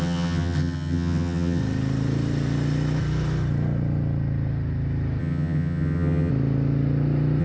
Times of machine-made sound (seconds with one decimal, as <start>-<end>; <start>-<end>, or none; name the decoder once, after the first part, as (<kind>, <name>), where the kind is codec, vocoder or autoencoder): 0.0-1.6 (vocoder, HiFi-GAN); 5.2-6.3